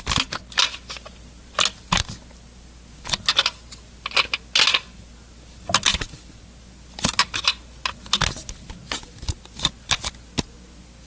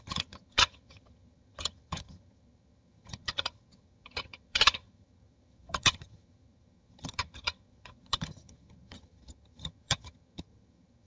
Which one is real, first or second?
first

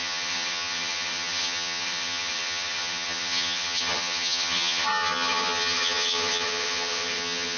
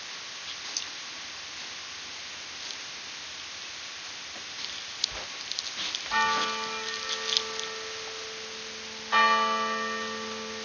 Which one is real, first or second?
second